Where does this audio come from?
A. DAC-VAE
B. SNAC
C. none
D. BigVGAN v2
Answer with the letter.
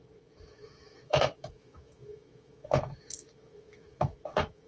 A